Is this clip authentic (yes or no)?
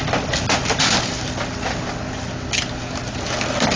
yes